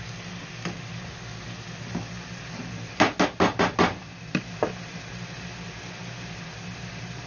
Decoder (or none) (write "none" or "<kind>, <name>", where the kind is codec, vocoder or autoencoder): none